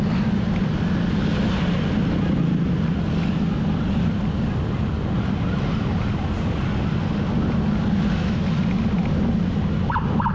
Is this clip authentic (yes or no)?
yes